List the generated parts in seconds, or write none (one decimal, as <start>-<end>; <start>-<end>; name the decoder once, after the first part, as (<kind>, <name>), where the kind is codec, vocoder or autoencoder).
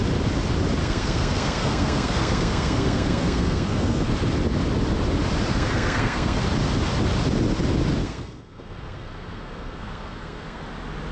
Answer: 0.8-4.1 (codec, SNAC); 5.5-6.4; 8.0-10.6